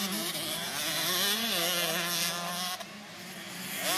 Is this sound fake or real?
real